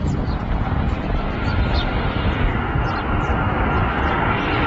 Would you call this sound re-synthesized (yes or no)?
no